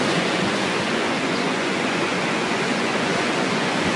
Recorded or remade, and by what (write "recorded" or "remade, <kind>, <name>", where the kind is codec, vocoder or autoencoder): remade, vocoder, Vocos